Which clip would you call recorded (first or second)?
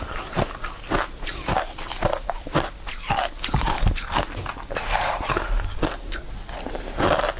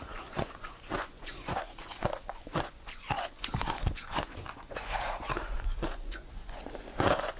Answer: first